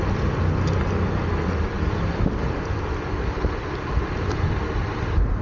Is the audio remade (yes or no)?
no